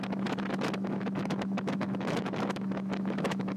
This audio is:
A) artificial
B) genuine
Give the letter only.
A